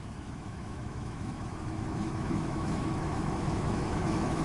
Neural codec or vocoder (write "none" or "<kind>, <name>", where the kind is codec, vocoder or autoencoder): autoencoder, DAC-VAE